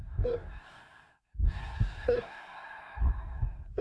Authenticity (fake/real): fake